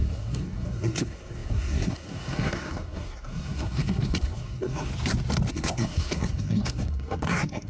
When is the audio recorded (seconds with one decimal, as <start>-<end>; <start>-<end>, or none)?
4.9-5.5